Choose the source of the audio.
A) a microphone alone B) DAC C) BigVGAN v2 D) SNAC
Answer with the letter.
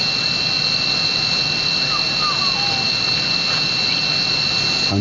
A